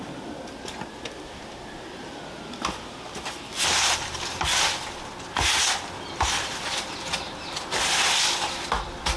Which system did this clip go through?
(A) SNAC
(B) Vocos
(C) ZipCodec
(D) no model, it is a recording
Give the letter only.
D